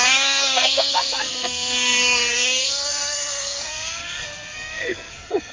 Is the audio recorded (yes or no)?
no